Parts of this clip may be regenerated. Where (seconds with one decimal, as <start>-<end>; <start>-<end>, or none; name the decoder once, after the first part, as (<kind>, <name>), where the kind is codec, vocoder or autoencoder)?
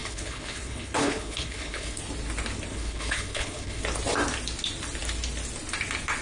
0.0-2.0 (codec, HILCodec); 2.7-3.8